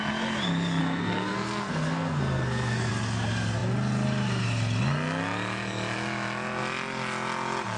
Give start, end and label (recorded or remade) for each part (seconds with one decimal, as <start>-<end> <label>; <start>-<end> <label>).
0.0-0.8 recorded; 0.8-2.9 remade; 2.9-7.8 recorded